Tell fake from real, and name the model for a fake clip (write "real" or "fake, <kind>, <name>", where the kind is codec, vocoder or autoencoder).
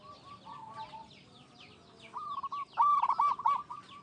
real